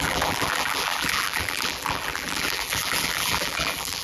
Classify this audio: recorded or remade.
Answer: remade